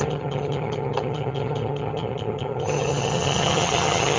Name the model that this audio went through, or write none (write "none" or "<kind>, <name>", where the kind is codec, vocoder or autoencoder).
vocoder, HiFi-GAN